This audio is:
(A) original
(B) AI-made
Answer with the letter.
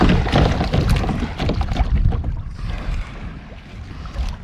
A